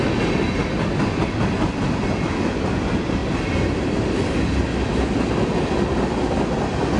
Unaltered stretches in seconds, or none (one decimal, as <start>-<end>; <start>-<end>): 0.0-7.0